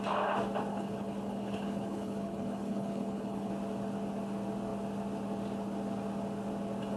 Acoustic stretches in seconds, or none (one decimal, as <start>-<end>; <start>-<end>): 0.0-0.7; 3.5-7.0